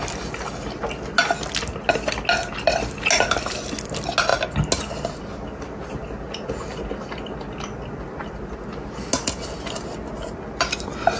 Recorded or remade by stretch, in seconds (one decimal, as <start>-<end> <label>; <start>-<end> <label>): 0.0-11.2 recorded